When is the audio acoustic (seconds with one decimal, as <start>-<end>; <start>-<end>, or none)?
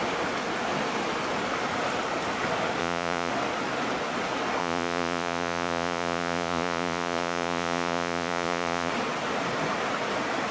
0.0-2.8; 3.3-4.6; 8.9-10.5